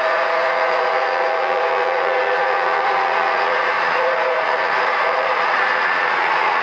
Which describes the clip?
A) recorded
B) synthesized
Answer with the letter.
B